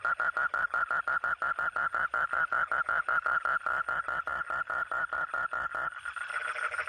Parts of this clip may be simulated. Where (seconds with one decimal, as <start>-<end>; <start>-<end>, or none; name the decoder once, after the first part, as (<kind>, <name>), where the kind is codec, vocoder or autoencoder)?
none